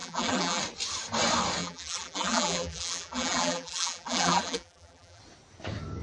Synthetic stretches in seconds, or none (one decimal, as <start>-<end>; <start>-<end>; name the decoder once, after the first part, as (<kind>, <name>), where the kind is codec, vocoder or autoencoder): 0.0-0.6 (vocoder, BigVGAN v2); 1.6-5.2